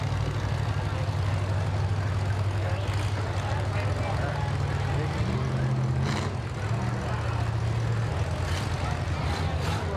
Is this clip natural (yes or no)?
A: yes